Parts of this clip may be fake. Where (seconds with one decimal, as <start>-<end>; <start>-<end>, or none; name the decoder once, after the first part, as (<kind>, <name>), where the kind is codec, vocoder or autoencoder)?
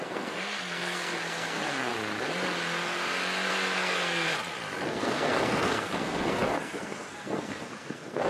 0.0-1.9 (codec, SNAC); 3.5-4.3; 4.9-8.3